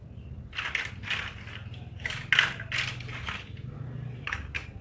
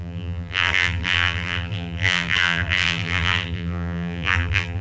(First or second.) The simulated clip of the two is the second